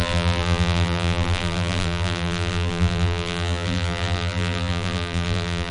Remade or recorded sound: remade